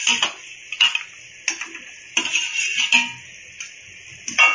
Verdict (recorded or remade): recorded